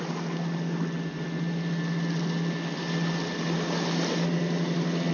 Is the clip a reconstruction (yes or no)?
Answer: no